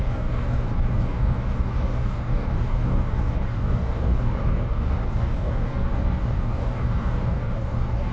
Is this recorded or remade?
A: remade